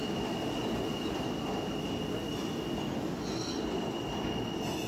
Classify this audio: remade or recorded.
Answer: recorded